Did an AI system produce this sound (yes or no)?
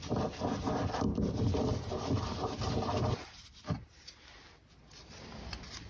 no